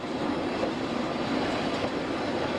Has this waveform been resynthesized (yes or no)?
no